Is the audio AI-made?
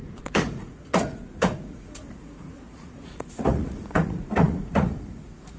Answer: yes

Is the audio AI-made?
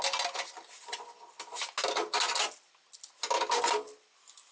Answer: no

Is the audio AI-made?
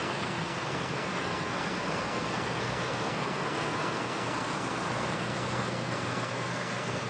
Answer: yes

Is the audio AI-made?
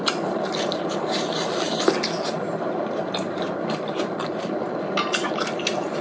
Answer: yes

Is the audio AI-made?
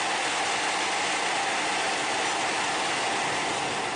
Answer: no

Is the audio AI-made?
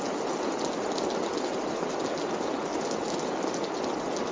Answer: no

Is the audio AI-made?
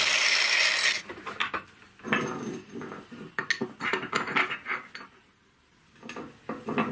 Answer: no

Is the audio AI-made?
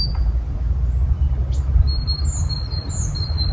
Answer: no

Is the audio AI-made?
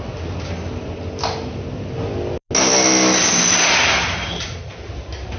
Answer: no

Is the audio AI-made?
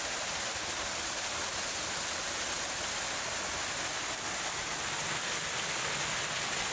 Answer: no